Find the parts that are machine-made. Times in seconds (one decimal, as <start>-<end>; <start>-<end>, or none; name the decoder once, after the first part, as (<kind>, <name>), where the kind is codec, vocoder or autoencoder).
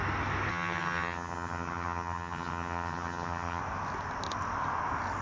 0.5-3.6 (vocoder, HiFi-GAN)